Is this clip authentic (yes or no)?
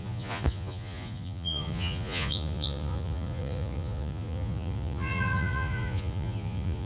no